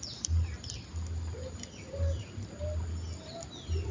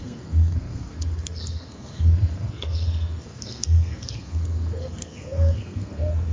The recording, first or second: first